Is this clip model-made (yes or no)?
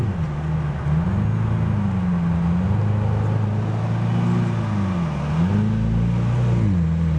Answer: no